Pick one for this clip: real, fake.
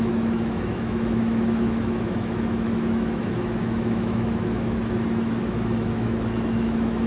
fake